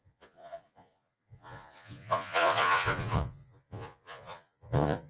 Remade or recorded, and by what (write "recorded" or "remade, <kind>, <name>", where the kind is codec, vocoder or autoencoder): remade, vocoder, Vocos